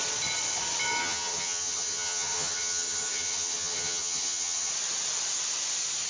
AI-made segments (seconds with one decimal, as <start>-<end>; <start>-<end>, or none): 1.0-4.7